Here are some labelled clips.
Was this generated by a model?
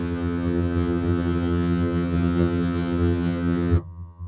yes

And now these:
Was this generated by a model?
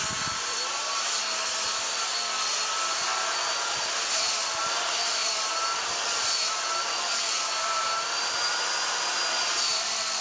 no